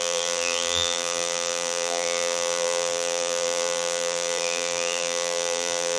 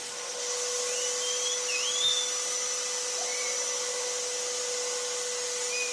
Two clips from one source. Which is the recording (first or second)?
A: second